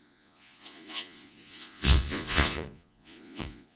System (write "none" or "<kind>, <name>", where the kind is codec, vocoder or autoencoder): vocoder, Vocos